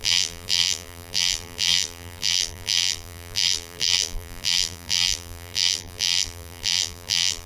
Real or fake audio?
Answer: fake